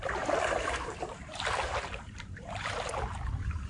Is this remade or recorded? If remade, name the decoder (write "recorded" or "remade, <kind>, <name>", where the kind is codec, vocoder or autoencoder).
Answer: remade, vocoder, BigVGAN v2